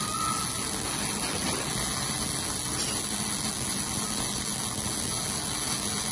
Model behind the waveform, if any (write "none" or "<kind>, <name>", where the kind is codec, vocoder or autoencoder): none